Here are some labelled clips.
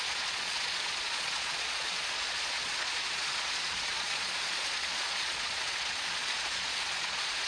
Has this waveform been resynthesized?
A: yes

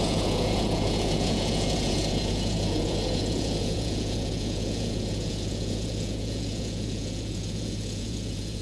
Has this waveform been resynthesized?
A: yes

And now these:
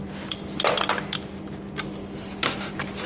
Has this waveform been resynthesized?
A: no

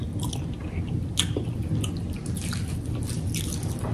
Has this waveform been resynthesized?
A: no